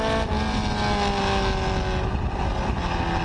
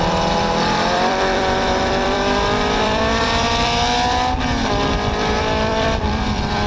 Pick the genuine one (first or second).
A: first